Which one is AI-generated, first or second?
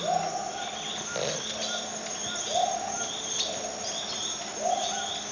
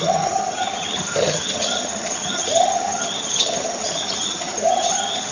second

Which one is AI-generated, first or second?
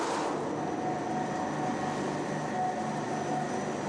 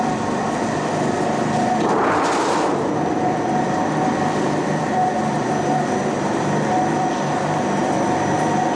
second